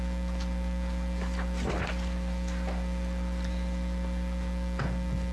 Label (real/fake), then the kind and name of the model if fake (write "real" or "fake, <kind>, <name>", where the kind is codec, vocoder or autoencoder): real